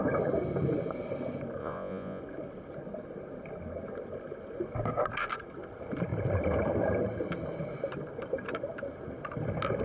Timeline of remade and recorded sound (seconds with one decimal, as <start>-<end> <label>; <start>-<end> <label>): 0.0-1.6 recorded; 1.6-2.2 remade; 2.2-9.8 recorded